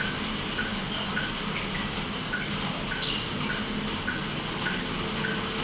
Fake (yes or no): no